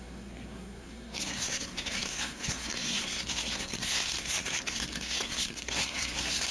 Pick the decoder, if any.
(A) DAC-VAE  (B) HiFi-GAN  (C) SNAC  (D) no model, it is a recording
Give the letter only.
C